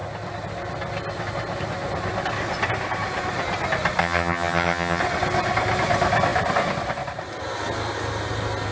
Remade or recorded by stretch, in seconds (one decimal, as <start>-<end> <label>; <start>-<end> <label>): 0.0-4.0 recorded; 4.0-5.0 remade; 5.0-8.7 recorded